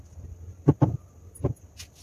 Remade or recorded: recorded